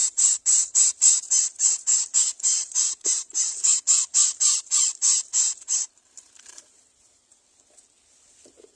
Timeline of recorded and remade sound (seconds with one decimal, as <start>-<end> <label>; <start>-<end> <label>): 0.0-0.9 remade; 0.9-2.5 recorded; 2.5-3.8 remade; 3.8-8.8 recorded